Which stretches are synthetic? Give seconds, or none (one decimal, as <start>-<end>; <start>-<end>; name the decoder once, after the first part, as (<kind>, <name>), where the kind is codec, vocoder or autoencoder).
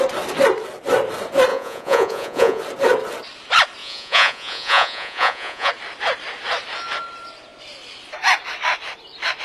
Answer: 1.5-2.6 (vocoder, Vocos); 3.8-5.7